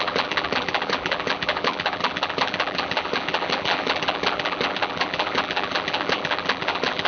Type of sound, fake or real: fake